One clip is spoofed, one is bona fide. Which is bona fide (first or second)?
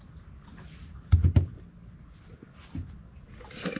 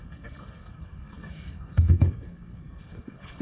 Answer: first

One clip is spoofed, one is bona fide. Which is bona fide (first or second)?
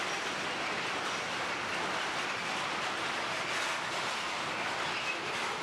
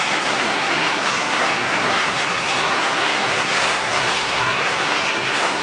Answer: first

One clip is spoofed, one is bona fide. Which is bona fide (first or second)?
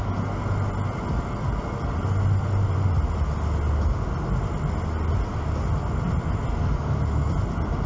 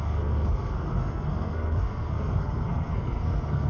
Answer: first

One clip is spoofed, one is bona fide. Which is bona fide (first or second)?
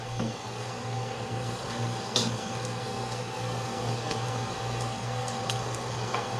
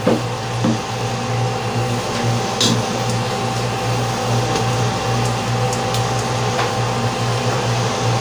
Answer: second